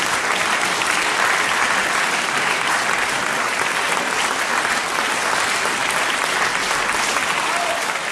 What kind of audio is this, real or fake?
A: real